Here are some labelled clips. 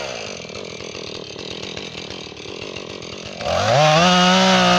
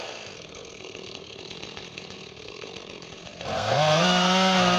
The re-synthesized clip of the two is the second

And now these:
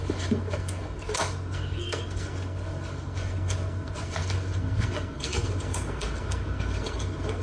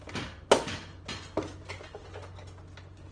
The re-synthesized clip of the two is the first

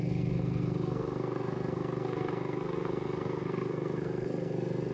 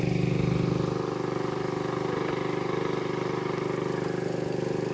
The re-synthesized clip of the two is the first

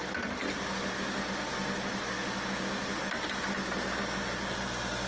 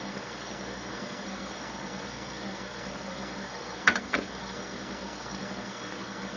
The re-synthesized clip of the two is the second